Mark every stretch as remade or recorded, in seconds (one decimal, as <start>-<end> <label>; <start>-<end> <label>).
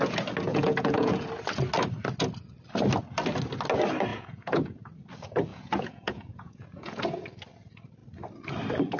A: 0.0-0.5 recorded; 0.5-1.3 remade; 1.3-4.1 recorded; 4.1-4.8 remade; 4.8-5.5 recorded; 5.5-7.0 remade; 7.0-9.0 recorded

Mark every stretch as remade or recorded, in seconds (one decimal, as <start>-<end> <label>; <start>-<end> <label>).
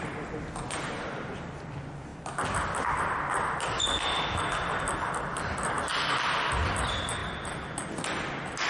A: 0.0-8.7 recorded